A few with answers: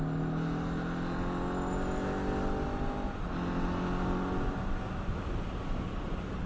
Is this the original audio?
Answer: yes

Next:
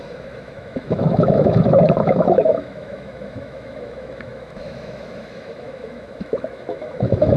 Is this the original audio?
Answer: no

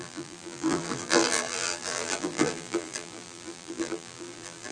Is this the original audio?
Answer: no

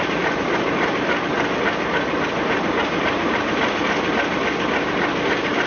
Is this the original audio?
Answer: yes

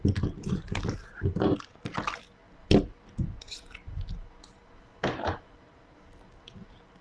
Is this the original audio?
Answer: yes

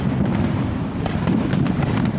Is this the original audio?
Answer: yes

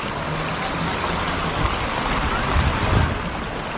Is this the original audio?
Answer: yes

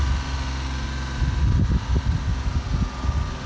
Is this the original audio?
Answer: yes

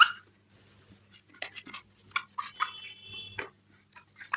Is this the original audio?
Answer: yes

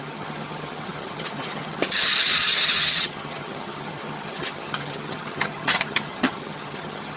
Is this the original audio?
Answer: no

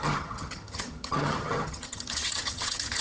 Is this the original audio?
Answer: no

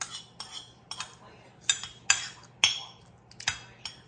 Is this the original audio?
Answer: yes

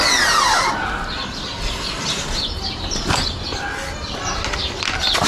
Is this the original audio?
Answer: yes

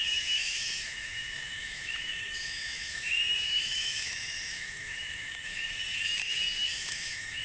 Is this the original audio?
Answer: no